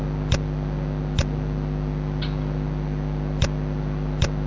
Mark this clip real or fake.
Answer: real